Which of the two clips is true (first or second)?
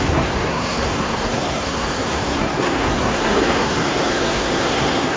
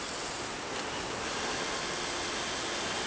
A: second